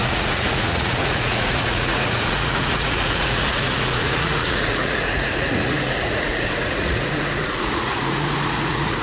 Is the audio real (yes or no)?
no